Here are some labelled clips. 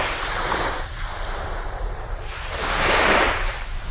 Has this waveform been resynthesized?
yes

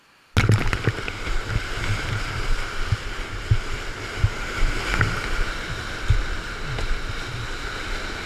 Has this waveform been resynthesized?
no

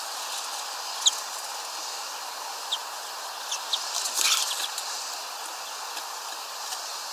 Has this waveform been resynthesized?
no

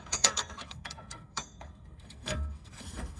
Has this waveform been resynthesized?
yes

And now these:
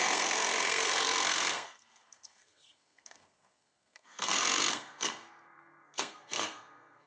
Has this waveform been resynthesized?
yes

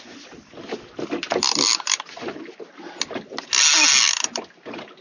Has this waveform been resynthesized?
no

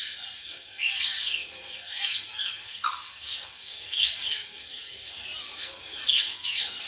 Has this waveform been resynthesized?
yes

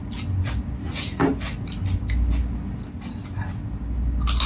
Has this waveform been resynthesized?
no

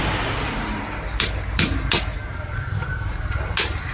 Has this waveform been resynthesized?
no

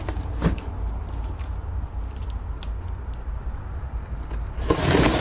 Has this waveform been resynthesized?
no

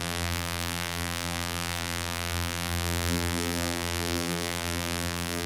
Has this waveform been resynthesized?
yes